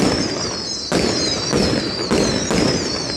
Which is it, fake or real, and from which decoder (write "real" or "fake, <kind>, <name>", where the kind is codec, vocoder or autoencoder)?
real